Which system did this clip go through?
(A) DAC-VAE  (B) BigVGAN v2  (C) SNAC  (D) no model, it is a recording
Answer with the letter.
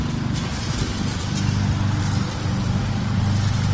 D